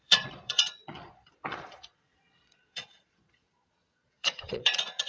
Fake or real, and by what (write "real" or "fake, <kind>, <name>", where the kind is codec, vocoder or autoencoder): fake, vocoder, Vocos